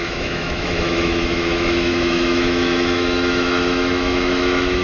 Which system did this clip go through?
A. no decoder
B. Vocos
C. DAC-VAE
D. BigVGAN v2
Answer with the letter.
C